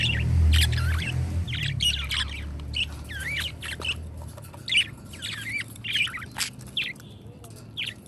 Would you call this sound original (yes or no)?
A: yes